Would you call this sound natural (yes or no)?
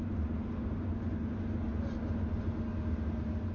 yes